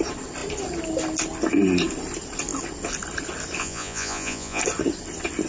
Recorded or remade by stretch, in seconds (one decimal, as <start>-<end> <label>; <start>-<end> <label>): 0.0-3.6 recorded; 3.6-4.6 remade; 4.6-5.5 recorded